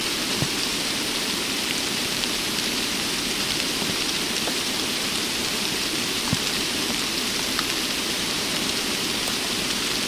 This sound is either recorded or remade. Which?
remade